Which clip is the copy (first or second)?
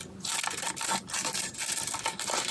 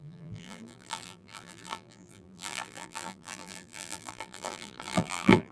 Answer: second